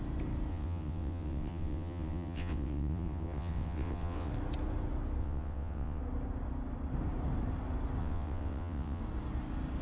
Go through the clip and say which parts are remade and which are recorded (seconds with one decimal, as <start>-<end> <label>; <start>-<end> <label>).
0.0-0.5 recorded; 0.5-4.3 remade; 4.3-5.2 recorded; 5.2-6.0 remade; 6.0-8.0 recorded; 8.0-9.0 remade; 9.0-9.8 recorded